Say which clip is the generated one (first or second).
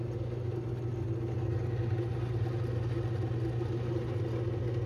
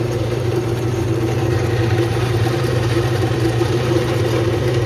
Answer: second